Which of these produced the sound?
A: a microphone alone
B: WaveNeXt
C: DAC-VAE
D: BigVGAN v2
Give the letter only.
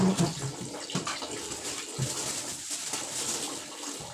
A